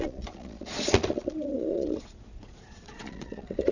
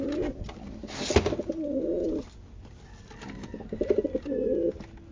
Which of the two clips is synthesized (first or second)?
first